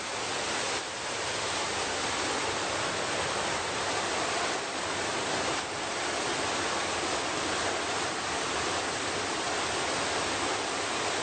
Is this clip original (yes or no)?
yes